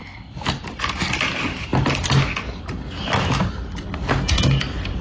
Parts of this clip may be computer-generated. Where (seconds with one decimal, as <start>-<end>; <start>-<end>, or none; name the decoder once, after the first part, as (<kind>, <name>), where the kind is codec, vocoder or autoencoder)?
none